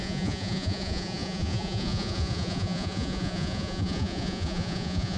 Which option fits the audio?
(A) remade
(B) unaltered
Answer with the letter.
A